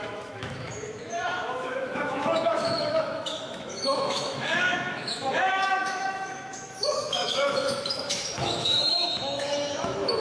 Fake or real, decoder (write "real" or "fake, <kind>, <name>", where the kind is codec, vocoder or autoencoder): fake, autoencoder, DAC-VAE